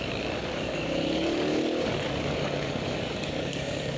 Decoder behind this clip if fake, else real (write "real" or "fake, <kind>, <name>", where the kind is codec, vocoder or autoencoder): fake, codec, DAC